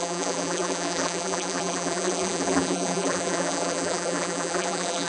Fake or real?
fake